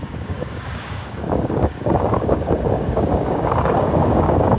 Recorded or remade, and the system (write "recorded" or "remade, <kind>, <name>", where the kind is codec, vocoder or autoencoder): remade, codec, DAC